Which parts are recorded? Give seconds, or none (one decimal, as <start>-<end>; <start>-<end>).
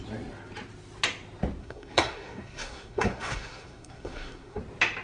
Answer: 0.0-1.6; 4.6-5.0